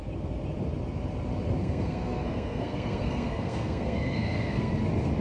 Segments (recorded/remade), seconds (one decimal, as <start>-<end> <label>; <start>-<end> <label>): 0.0-1.6 recorded; 1.6-4.7 remade; 4.7-5.2 recorded